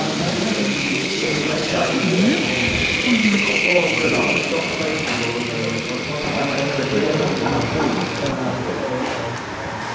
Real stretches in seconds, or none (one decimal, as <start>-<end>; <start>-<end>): 0.0-0.8; 1.9-3.2; 4.4-9.9

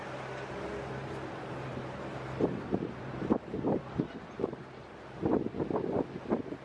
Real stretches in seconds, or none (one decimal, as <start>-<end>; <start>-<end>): 0.0-0.9; 4.9-6.6

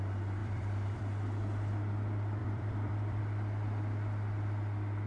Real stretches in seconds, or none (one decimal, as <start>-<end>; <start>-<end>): 0.0-0.4; 1.0-2.4; 3.2-5.1

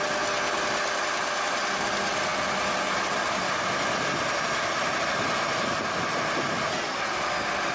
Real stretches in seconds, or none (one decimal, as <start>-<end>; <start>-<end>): 0.0-7.7

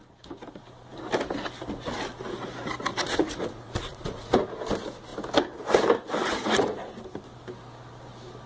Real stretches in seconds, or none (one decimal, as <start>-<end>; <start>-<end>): 0.0-2.9; 4.4-8.5

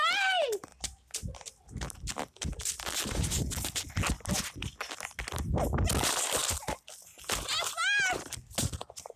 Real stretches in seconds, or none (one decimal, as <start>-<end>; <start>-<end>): 0.0-9.2